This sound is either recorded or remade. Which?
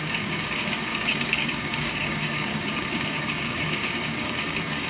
remade